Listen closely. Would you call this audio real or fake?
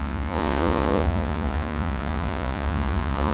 fake